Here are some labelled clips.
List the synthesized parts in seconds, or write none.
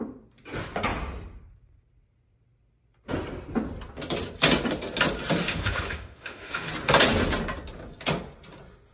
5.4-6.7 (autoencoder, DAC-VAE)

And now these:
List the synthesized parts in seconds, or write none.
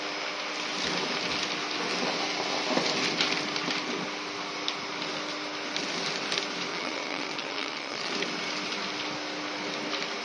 6.7-8.1 (vocoder, Vocos)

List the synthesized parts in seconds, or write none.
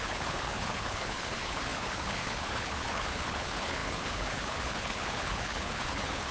0.0-6.3 (codec, HILCodec)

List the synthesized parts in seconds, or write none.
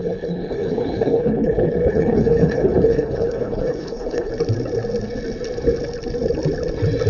0.0-4.3 (codec, HILCodec)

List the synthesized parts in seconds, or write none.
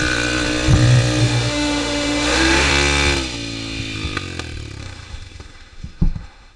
1.2-2.7 (autoencoder, DAC-VAE); 4.8-6.6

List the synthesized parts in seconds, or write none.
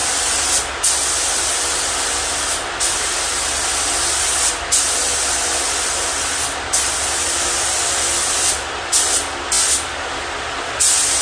none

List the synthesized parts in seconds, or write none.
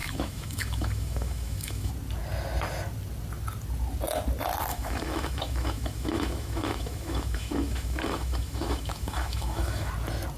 0.0-1.9 (autoencoder, DAC-VAE); 4.7-9.9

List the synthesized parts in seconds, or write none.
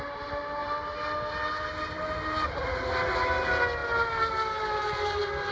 none